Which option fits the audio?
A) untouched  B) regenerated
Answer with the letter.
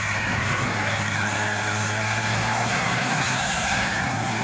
B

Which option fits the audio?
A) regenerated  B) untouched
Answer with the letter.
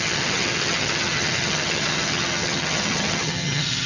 A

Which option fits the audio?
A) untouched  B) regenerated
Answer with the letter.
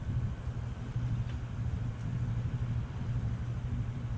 A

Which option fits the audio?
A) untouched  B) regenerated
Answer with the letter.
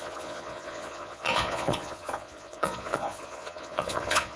B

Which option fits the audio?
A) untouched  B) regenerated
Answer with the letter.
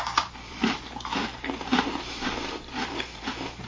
B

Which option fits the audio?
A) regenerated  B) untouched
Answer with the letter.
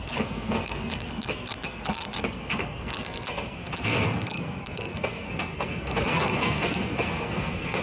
A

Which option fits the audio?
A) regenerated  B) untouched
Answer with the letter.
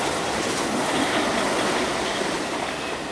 B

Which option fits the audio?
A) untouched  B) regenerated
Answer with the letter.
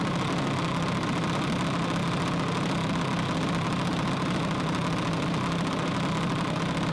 A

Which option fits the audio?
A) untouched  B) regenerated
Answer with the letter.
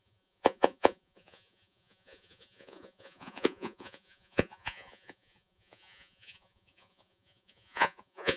B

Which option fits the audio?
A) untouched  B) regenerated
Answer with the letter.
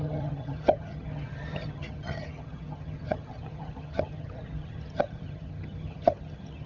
B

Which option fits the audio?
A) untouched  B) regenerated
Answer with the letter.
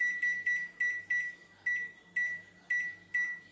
A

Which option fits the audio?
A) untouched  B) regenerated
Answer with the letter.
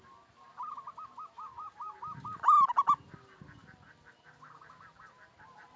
A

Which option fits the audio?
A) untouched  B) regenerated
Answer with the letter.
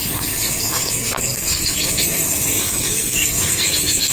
B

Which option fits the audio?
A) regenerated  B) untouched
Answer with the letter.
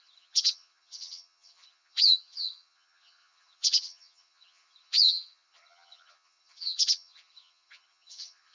A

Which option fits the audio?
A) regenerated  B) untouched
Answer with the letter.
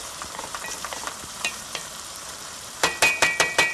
A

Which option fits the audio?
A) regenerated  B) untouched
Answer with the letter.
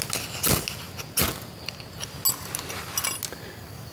B